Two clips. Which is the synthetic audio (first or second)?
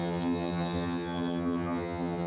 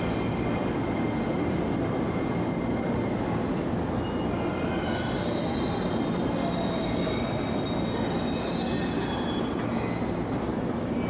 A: first